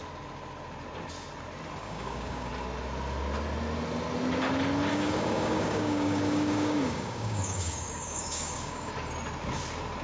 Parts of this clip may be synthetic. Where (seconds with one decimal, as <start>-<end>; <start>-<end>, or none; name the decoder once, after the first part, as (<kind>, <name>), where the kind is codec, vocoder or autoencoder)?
1.8-2.5 (codec, DAC); 4.9-8.9